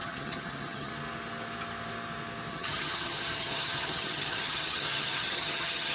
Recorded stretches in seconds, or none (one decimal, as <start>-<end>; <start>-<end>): 0.9-2.5